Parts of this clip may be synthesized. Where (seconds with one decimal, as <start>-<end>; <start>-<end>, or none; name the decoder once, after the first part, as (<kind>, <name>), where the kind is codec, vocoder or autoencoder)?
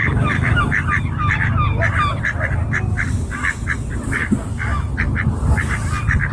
none